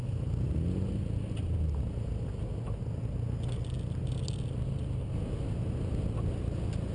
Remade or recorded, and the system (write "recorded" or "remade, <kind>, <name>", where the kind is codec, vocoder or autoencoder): recorded